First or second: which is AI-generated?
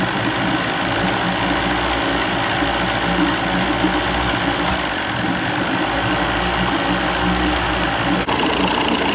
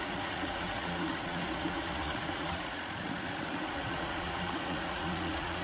second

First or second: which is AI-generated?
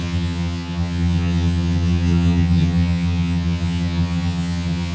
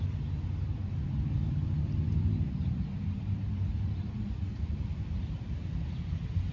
first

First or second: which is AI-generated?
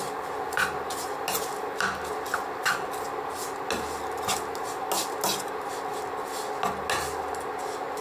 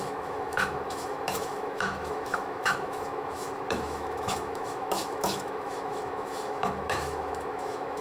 second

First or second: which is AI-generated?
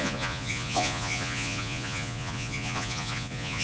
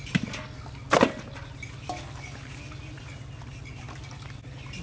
first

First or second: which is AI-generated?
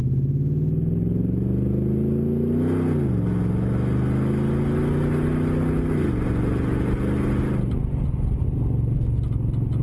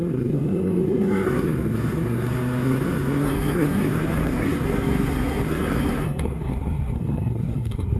second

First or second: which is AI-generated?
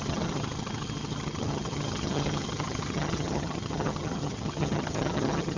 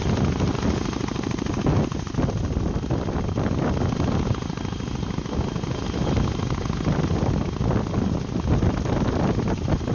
first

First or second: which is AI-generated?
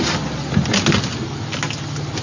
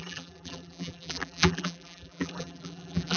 second